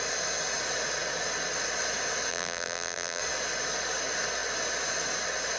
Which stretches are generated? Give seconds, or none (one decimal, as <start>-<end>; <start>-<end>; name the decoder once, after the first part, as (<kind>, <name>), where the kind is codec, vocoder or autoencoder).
2.3-3.2 (vocoder, BigVGAN v2)